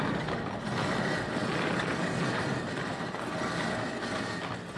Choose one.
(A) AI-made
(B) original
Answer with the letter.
B